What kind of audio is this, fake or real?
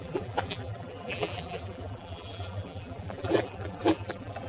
fake